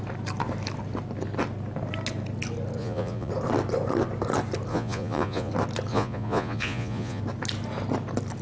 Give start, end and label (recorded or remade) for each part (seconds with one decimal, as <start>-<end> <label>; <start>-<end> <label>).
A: 0.0-2.8 recorded; 2.8-3.3 remade; 3.3-4.7 recorded; 4.7-5.5 remade; 5.5-5.9 recorded; 5.9-7.2 remade; 7.2-8.4 recorded